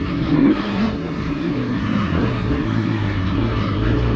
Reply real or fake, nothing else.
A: fake